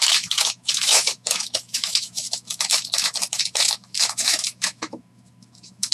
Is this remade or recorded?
remade